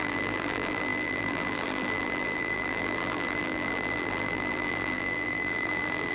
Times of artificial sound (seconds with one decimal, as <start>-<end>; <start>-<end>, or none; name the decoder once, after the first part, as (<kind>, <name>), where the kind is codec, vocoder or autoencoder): 0.0-6.1 (vocoder, BigVGAN v2)